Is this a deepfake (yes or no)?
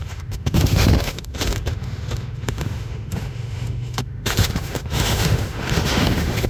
yes